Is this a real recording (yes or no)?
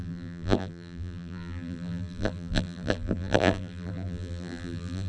no